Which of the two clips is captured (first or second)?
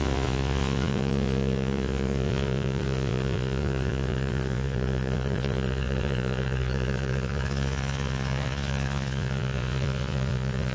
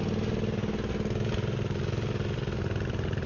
second